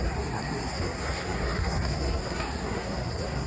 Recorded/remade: remade